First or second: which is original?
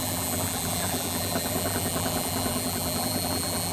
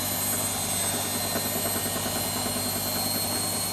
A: second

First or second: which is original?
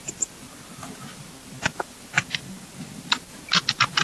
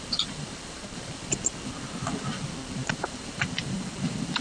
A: first